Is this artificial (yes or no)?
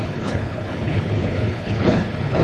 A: yes